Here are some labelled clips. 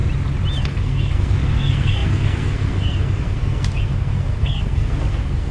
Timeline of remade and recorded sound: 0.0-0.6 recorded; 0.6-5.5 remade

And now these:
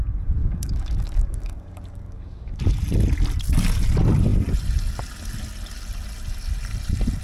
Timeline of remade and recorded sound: 0.0-0.4 recorded; 0.4-2.6 remade; 2.6-7.2 recorded